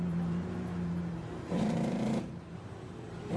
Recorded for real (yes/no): no